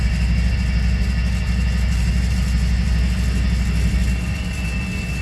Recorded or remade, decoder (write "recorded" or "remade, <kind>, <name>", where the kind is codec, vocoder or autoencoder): recorded